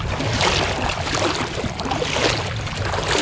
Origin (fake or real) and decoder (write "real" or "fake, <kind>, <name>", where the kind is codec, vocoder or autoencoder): real